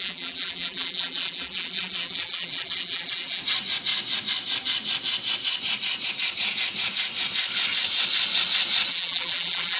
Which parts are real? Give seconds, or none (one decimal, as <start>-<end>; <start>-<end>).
3.4-8.9